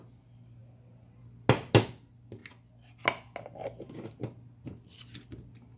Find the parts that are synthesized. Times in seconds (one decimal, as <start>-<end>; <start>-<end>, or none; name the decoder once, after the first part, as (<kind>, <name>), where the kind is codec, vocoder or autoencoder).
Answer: none